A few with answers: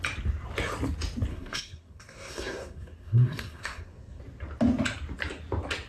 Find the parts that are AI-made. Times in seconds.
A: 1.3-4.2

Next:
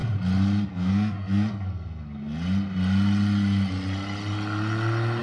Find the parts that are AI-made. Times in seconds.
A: 0.7-2.2

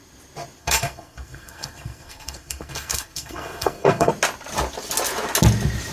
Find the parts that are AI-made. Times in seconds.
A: 0.6-4.1

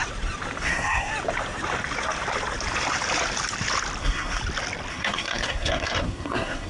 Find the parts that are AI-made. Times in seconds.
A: 0.6-1.1; 4.0-4.4; 4.9-6.7

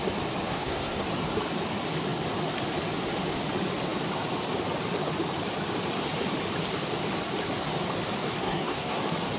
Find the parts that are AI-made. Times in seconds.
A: 0.5-1.0; 8.4-9.0

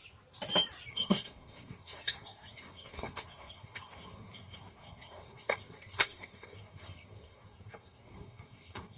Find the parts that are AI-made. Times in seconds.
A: 0.9-9.0